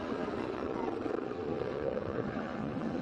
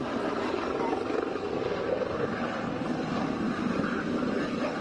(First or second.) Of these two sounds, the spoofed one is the first